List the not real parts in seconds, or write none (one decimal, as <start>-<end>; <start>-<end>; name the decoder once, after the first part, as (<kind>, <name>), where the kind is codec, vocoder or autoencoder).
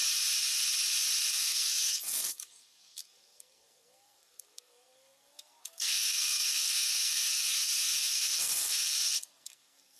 1.3-10.0 (codec, SNAC)